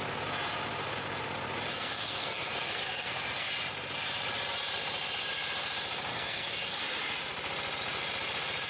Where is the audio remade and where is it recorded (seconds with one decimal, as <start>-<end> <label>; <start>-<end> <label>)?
0.0-1.7 recorded; 1.7-3.5 remade; 3.5-6.1 recorded; 6.1-6.8 remade; 6.8-8.7 recorded